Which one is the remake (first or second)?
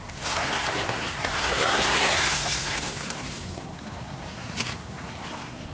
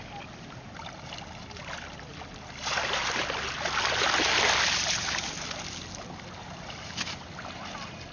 first